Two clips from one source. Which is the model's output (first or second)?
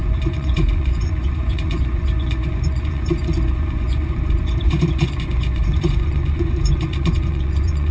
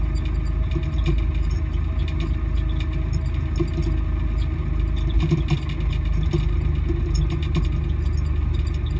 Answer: first